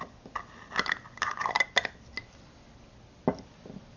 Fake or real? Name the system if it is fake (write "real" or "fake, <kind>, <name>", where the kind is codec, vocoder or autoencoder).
real